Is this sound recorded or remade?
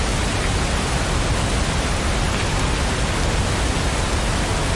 recorded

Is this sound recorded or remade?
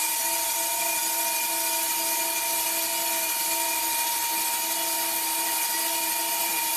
recorded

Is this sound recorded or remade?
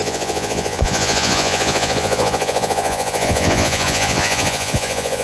remade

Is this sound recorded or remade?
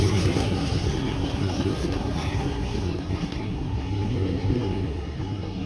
remade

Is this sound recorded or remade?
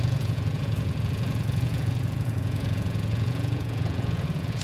remade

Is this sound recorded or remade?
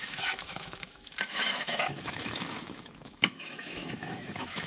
remade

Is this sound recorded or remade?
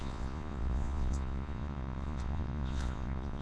remade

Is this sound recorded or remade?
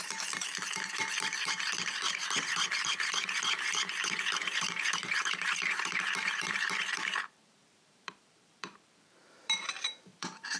remade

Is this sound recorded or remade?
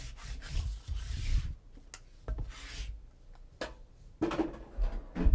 recorded